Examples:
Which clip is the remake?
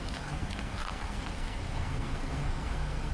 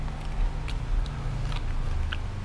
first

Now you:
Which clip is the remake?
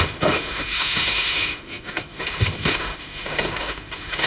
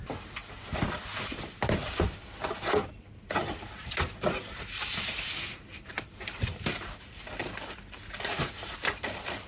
first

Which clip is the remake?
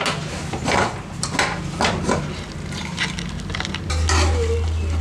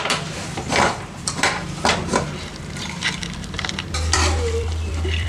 second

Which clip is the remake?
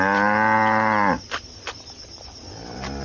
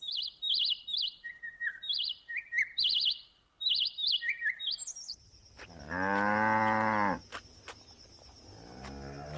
first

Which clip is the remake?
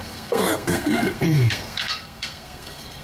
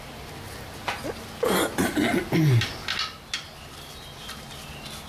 first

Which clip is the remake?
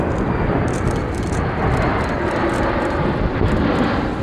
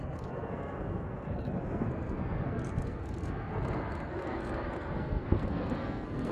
second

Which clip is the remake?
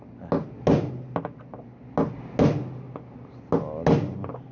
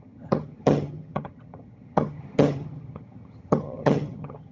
second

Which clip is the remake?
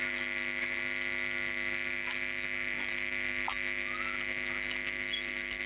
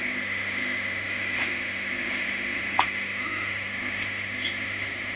second